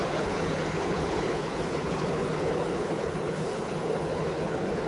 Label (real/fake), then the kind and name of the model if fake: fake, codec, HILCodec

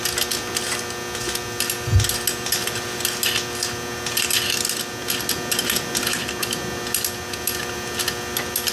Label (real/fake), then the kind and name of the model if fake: real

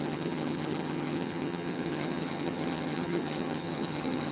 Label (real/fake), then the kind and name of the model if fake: fake, vocoder, HiFi-GAN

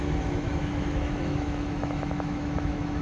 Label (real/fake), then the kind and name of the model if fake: fake, autoencoder, DAC-VAE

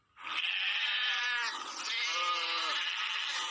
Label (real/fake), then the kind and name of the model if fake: real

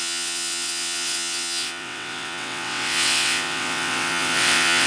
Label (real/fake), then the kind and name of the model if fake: fake, vocoder, WaveNeXt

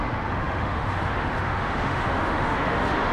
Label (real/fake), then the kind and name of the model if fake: fake, autoencoder, DAC-VAE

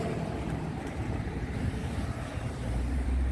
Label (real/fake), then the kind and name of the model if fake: fake, vocoder, BigVGAN v2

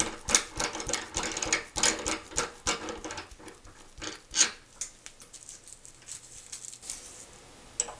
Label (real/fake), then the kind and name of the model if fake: real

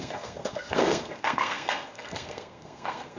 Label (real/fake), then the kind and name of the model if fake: fake, codec, SNAC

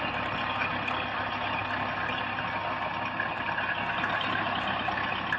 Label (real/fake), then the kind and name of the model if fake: real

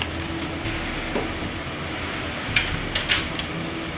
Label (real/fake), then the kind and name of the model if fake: real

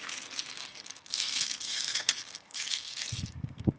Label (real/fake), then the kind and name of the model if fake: fake, codec, SNAC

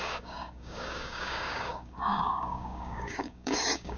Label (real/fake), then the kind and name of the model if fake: fake, codec, DAC